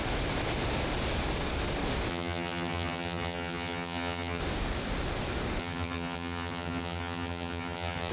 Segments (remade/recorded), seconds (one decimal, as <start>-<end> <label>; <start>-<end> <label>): 0.0-2.1 recorded; 2.1-4.4 remade; 4.4-5.6 recorded; 5.6-8.1 remade